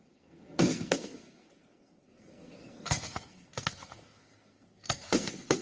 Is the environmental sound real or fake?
fake